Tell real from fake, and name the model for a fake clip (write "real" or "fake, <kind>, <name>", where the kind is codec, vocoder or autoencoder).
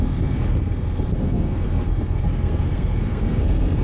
fake, codec, SNAC